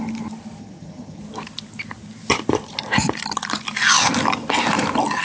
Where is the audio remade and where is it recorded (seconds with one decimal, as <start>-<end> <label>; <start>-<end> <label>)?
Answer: 0.0-0.6 recorded; 0.6-1.2 remade; 1.2-5.2 recorded